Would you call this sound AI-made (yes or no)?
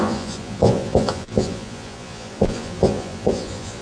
yes